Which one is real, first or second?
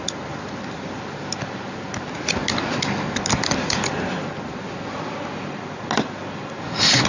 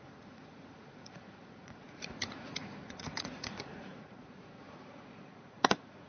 first